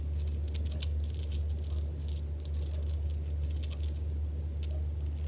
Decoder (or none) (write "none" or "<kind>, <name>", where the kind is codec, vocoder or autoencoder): none